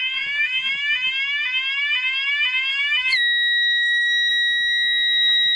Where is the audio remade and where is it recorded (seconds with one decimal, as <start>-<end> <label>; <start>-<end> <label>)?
0.0-0.7 remade; 0.7-2.7 recorded; 2.7-4.3 remade; 4.3-5.6 recorded